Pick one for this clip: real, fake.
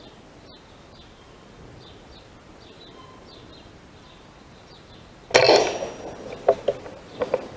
real